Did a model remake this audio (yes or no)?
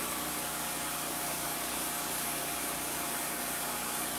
yes